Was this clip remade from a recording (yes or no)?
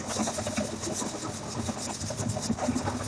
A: no